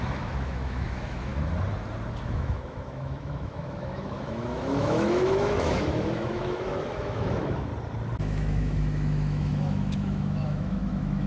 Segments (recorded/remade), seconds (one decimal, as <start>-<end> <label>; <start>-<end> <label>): 0.0-1.3 remade; 1.3-2.2 recorded; 2.2-7.7 remade; 7.7-8.2 recorded; 8.2-11.3 remade

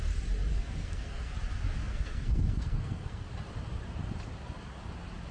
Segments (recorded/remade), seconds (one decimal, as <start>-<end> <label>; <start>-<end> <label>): 0.0-0.5 recorded; 0.5-1.3 remade; 1.3-1.8 recorded; 1.8-3.3 remade; 3.3-5.3 recorded

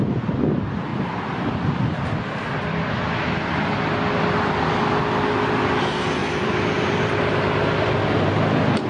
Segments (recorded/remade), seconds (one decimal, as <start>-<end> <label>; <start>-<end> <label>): 0.0-0.9 recorded; 0.9-2.2 remade; 2.2-6.2 recorded; 6.2-7.2 remade; 7.2-8.9 recorded

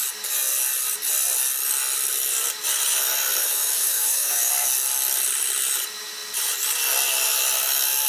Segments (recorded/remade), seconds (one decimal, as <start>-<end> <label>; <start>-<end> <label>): 0.0-3.4 recorded; 3.4-4.5 remade; 4.5-8.1 recorded

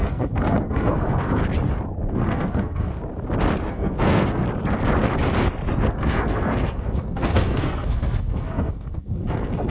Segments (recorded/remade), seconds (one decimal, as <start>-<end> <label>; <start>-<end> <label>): 0.0-1.4 remade; 1.4-2.1 recorded; 2.1-2.9 remade; 2.9-3.7 recorded; 3.7-4.4 remade; 4.4-5.9 recorded; 5.9-9.7 remade

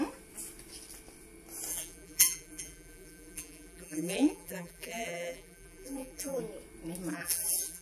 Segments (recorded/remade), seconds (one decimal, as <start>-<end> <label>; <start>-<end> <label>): 0.0-1.7 recorded; 1.7-6.4 remade; 6.4-7.1 recorded; 7.1-7.8 remade

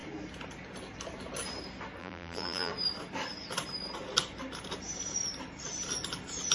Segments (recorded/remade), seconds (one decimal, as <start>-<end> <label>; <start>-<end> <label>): 0.0-2.0 recorded; 2.0-2.7 remade; 2.7-6.5 recorded

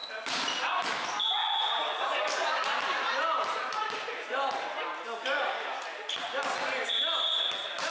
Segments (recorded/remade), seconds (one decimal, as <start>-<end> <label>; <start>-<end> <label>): 0.0-7.9 recorded